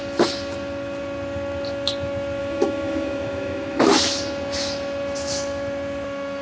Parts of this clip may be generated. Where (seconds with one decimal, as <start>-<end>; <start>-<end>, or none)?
2.4-3.9